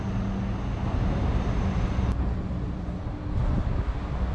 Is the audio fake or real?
real